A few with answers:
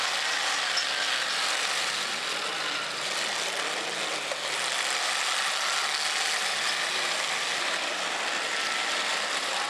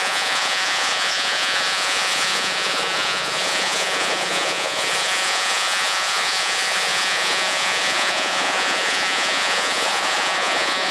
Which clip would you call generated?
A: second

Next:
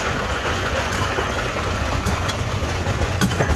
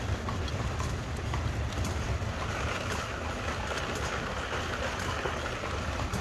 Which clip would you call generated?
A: first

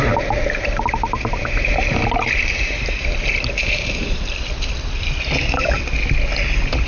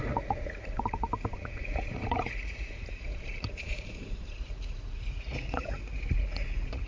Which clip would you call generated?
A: second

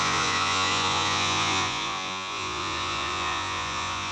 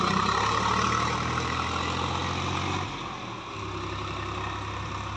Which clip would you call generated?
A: first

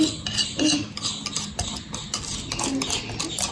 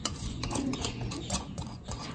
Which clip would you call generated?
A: second